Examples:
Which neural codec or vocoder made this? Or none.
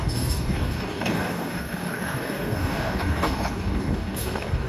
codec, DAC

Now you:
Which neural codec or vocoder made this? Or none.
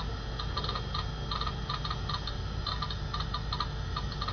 none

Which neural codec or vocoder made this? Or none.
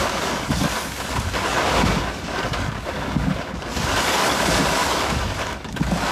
codec, DAC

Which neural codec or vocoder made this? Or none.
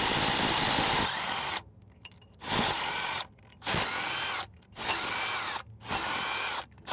none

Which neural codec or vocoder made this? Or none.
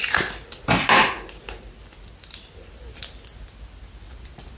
none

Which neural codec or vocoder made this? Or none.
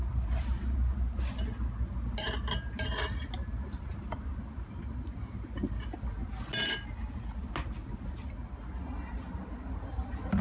none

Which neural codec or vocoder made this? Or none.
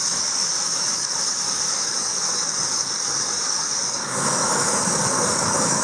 codec, DAC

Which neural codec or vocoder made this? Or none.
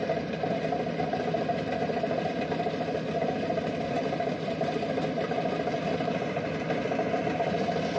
none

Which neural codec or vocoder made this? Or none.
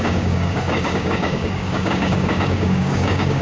codec, DAC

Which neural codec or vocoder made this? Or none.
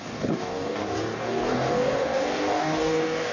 codec, DAC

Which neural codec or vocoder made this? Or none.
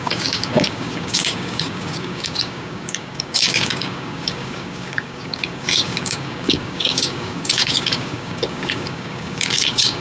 codec, DAC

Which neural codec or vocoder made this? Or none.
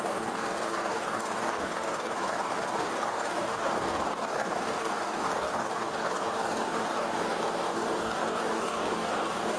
codec, DAC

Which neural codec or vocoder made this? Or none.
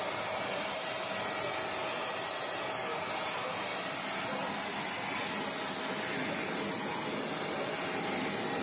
none